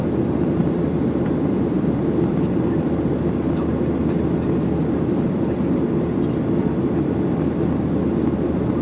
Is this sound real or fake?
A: real